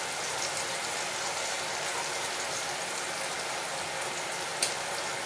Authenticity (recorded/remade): recorded